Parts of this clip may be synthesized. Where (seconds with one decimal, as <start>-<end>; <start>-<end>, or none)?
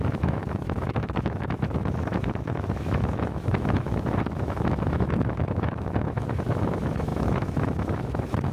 0.0-8.5